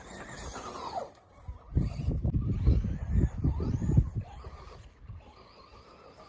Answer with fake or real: real